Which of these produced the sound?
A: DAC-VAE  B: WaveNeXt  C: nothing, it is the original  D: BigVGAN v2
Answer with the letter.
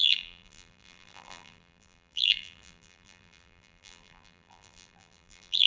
D